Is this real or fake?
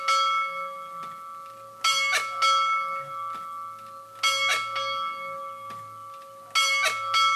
real